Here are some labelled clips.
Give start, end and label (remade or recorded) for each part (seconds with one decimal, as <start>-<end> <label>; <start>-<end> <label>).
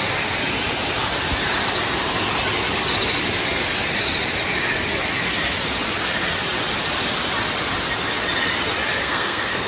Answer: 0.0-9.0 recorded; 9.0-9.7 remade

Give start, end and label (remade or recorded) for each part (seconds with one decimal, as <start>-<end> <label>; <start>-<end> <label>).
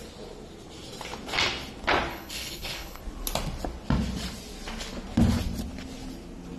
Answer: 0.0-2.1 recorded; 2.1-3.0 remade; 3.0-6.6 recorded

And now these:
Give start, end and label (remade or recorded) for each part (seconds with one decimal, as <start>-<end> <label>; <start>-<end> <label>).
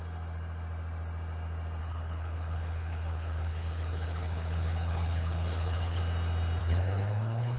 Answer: 0.0-1.8 recorded; 1.8-6.0 remade; 6.0-6.6 recorded; 6.6-7.6 remade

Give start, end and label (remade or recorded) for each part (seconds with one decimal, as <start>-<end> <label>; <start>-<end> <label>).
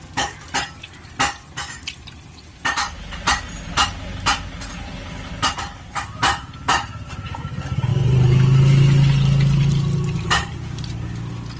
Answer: 0.0-11.6 recorded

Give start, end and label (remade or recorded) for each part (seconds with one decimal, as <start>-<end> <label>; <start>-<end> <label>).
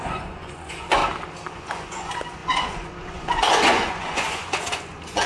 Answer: 0.0-1.0 remade; 1.0-1.5 recorded; 1.5-5.3 remade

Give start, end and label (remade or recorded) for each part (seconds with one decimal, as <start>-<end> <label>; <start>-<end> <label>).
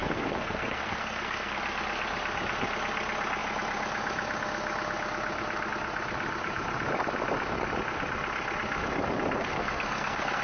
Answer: 0.0-1.6 remade; 1.6-9.4 recorded; 9.4-10.4 remade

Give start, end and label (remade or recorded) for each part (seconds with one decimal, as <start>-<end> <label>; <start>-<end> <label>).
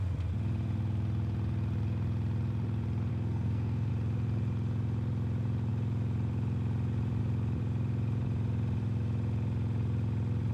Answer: 0.0-3.1 recorded; 3.1-3.9 remade; 3.9-10.5 recorded